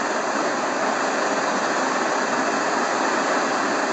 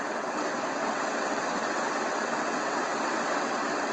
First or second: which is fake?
second